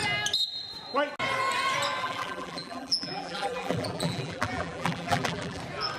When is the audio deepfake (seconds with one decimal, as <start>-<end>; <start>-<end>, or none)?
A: 2.0-5.6